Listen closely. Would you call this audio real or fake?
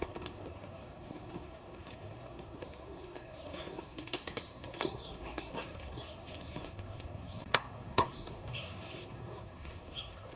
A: fake